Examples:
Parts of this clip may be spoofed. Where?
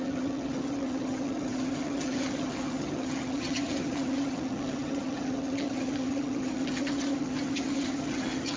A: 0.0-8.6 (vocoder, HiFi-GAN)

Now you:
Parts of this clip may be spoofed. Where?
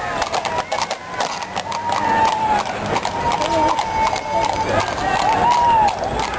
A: none